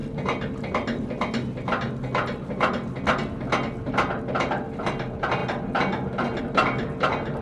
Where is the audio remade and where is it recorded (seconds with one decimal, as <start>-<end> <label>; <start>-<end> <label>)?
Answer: 0.0-7.4 recorded